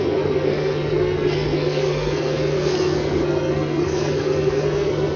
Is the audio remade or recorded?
remade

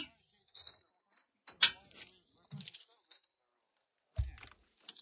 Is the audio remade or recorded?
recorded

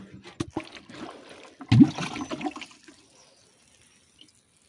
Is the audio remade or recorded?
recorded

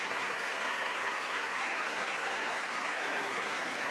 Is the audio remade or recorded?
remade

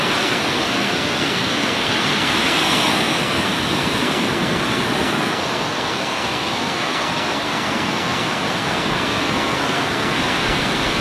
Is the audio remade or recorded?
remade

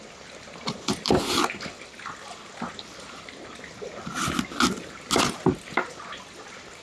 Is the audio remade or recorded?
recorded